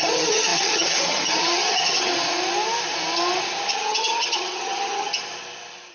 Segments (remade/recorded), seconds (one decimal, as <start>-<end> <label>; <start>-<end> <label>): 0.0-2.1 remade; 2.1-3.7 recorded; 3.7-5.1 remade; 5.1-5.9 recorded